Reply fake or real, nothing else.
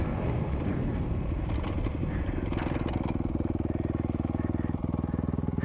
real